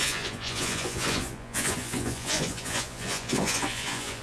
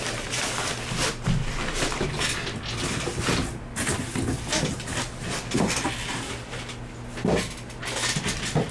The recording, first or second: second